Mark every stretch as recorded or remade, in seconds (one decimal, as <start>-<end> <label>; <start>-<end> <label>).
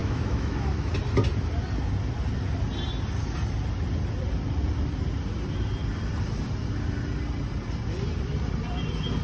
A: 0.0-0.9 remade; 0.9-9.2 recorded